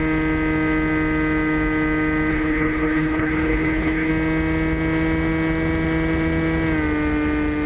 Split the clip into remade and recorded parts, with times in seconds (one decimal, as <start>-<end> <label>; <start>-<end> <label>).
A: 0.0-2.3 recorded; 2.3-4.1 remade; 4.1-7.7 recorded